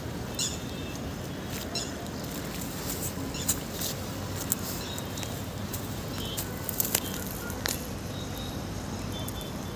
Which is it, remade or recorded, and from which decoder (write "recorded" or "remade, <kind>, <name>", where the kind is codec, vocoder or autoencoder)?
recorded